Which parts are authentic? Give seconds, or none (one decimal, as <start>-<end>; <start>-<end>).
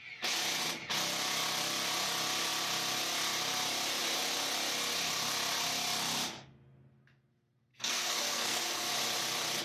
0.0-7.7; 8.9-9.6